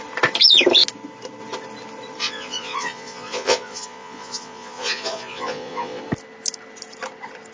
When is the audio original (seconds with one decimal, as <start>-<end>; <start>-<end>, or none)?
0.0-2.2; 6.0-7.5